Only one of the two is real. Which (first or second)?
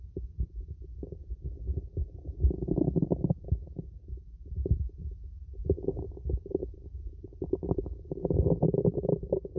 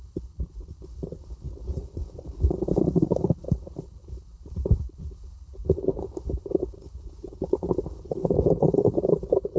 first